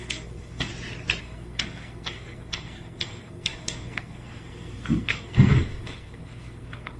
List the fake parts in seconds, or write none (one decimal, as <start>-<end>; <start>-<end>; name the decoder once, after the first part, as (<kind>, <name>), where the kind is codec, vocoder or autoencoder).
0.0-0.7 (codec, SNAC); 1.2-7.0